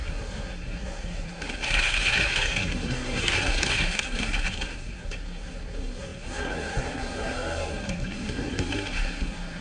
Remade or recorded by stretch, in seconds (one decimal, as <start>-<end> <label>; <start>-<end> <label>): 0.0-9.6 remade